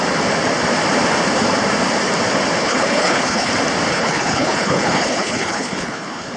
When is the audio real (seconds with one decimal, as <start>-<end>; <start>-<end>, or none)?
0.0-2.6; 3.5-3.9